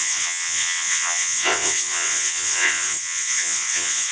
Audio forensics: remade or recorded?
remade